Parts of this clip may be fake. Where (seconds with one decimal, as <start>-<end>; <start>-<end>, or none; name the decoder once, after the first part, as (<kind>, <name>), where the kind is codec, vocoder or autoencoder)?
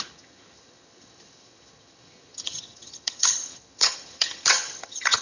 0.0-5.2 (vocoder, HiFi-GAN)